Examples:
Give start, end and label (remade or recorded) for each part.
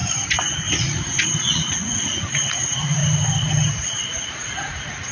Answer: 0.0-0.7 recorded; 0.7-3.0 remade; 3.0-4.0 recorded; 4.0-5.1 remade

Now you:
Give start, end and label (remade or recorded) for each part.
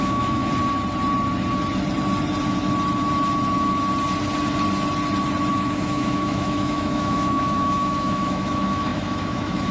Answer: 0.0-0.4 remade; 0.4-5.5 recorded; 5.5-9.7 remade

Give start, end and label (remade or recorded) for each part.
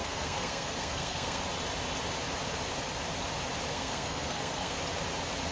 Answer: 0.0-1.4 remade; 1.4-3.7 recorded; 3.7-4.8 remade; 4.8-5.5 recorded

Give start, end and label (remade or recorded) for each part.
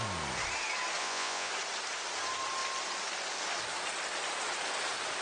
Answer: 0.0-1.0 recorded; 1.0-1.5 remade; 1.5-5.2 recorded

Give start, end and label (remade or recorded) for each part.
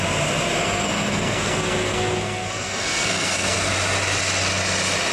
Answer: 0.0-0.6 recorded; 0.6-3.7 remade; 3.7-5.1 recorded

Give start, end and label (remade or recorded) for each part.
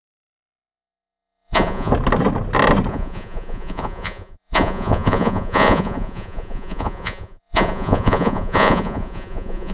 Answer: 0.0-1.9 remade; 1.9-2.9 recorded; 2.9-9.7 remade